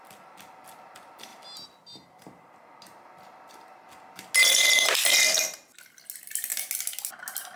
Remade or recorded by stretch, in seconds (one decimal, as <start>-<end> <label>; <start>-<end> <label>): 0.0-7.6 recorded